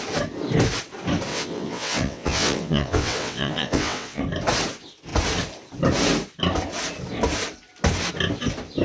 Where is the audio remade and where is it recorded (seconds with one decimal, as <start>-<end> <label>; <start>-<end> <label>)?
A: 0.0-1.3 recorded; 1.3-4.2 remade; 4.2-8.8 recorded